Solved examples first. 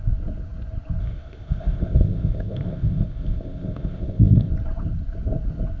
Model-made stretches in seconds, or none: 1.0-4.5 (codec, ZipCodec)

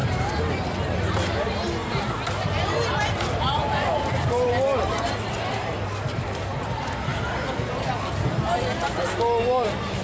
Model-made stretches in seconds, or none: none